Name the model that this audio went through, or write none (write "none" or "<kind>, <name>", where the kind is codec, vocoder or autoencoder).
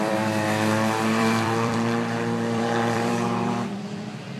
vocoder, BigVGAN v2